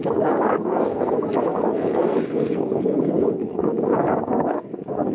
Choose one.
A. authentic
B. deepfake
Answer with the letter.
B